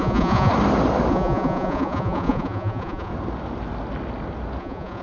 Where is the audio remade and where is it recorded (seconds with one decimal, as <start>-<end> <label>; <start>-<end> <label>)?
0.0-0.5 remade; 0.5-1.1 recorded; 1.1-3.1 remade; 3.1-4.6 recorded; 4.6-5.0 remade